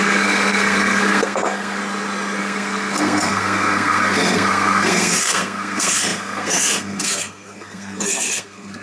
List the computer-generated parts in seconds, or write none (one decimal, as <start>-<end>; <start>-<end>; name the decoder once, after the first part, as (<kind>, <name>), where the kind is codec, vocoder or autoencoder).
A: 0.0-1.8 (codec, SNAC); 2.4-8.8